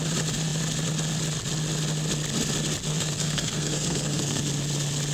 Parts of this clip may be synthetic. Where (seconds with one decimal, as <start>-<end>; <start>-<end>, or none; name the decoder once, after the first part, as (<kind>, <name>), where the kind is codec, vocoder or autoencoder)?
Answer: 2.9-4.4 (codec, SNAC)